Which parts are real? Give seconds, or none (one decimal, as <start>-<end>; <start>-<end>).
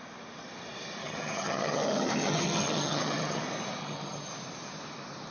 0.0-1.0; 3.4-3.8; 4.3-5.3